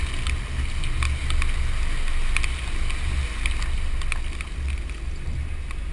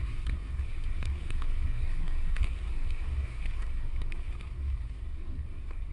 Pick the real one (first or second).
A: first